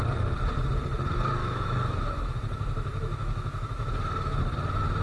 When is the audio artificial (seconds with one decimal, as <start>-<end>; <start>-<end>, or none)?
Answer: 1.4-4.4